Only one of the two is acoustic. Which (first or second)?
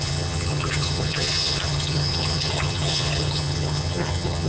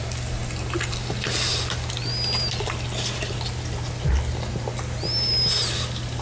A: second